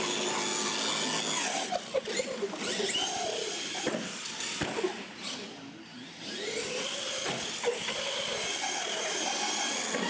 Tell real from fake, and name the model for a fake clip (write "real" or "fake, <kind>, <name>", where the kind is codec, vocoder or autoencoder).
real